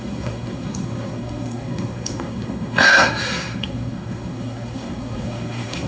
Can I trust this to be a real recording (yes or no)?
no